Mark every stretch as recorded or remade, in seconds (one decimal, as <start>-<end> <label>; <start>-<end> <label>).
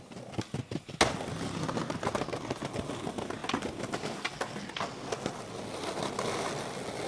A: 0.0-7.1 recorded